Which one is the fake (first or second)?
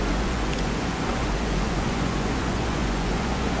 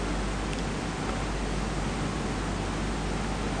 first